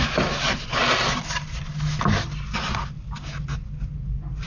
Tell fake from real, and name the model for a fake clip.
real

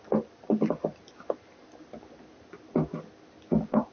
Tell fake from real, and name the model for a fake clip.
real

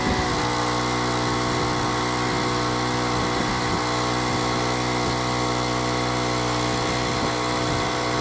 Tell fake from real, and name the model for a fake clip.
real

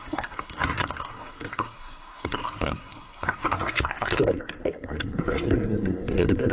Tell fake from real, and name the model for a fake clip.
fake, codec, SNAC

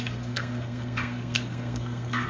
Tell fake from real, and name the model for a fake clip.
fake, codec, SNAC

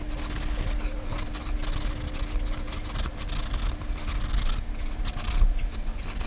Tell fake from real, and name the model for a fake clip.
real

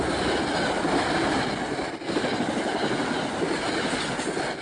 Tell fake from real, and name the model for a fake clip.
real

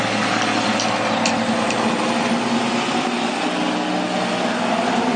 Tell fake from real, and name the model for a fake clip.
real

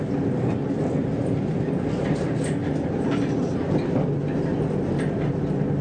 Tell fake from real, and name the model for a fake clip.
real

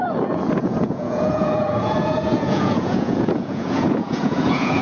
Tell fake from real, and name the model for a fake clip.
fake, vocoder, Vocos